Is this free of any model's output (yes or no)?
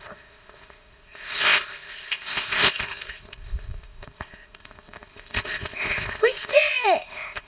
no